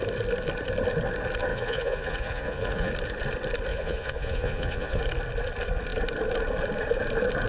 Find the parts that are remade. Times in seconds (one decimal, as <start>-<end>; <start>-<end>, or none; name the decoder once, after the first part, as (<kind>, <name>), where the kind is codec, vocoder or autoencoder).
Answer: 1.5-2.9 (vocoder, Vocos); 3.7-5.0